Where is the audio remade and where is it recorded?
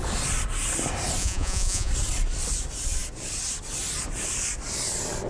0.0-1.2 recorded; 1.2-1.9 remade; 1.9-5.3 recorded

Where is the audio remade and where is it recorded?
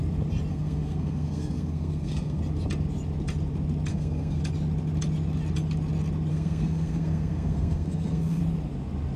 0.0-0.5 recorded; 0.5-2.4 remade; 2.4-3.9 recorded; 3.9-4.4 remade; 4.4-6.3 recorded; 6.3-8.4 remade; 8.4-9.2 recorded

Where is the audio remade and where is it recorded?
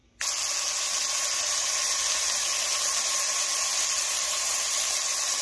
0.0-5.4 recorded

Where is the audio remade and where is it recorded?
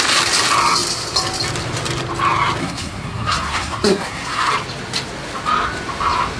0.0-2.6 recorded; 2.6-4.5 remade; 4.5-6.4 recorded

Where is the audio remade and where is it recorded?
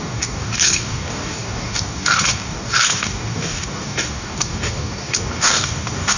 0.0-6.2 remade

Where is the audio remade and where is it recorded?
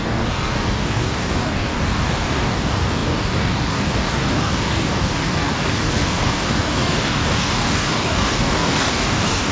0.0-9.5 remade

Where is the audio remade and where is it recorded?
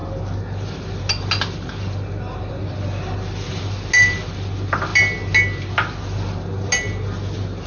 0.0-7.7 recorded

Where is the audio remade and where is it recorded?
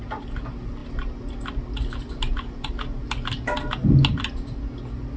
0.0-5.2 recorded